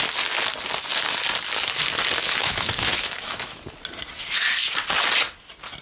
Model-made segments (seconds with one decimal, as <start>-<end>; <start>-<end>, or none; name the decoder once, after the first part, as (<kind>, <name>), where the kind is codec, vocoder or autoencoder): 2.4-3.6 (autoencoder, DAC-VAE)